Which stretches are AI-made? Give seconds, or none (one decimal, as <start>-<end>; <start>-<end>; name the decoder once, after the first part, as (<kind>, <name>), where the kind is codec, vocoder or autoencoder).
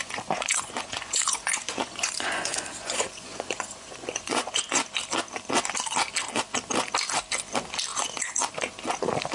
0.0-4.6 (vocoder, Vocos); 7.9-8.5